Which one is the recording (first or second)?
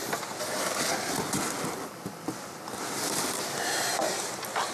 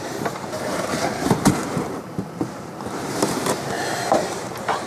first